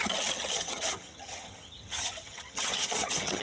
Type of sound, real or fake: fake